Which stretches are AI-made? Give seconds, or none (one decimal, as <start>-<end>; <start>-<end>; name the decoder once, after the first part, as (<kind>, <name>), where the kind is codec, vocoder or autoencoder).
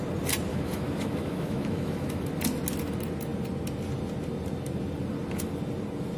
0.5-2.3 (autoencoder, DAC-VAE)